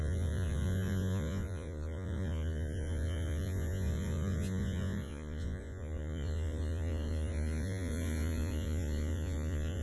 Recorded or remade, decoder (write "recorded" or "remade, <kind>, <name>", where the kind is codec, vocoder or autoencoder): remade, vocoder, Vocos